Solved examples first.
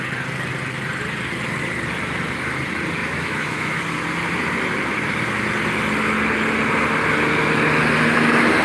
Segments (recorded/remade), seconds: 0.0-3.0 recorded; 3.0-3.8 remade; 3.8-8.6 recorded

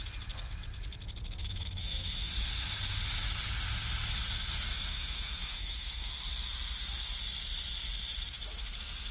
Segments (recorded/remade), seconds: 0.0-1.4 recorded; 1.4-2.3 remade; 2.3-4.7 recorded; 4.7-6.1 remade; 6.1-9.1 recorded